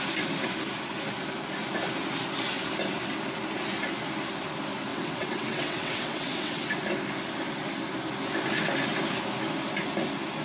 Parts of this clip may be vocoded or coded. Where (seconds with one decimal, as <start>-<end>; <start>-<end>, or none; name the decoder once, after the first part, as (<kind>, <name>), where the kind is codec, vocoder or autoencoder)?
4.9-6.7 (vocoder, WaveNeXt)